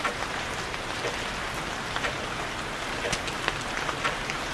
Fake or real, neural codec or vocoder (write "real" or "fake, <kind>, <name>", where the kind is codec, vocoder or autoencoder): real